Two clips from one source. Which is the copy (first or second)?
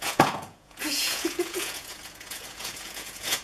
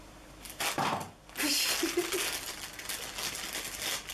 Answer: first